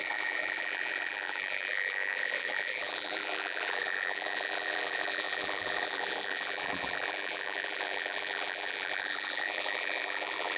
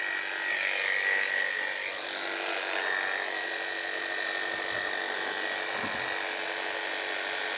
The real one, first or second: second